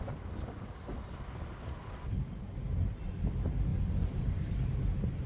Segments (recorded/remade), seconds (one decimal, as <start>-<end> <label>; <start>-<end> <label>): 0.0-5.3 recorded